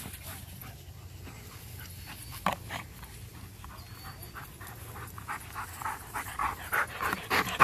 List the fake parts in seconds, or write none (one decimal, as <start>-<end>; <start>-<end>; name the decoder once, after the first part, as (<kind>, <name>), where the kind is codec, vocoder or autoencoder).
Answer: none